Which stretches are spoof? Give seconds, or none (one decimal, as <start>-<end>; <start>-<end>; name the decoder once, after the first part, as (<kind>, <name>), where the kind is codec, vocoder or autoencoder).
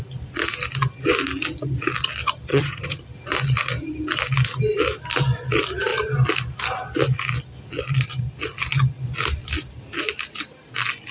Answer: 2.5-3.0 (vocoder, HiFi-GAN)